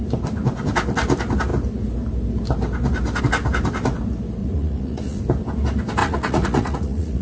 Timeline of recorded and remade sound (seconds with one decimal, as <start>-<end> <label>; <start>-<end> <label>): 0.0-4.4 recorded; 4.4-5.2 remade; 5.2-6.0 recorded; 6.0-7.2 remade